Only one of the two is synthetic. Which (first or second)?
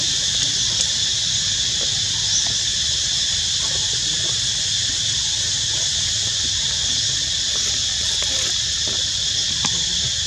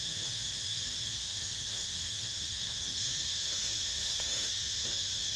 second